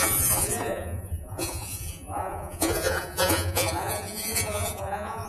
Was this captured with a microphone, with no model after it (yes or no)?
no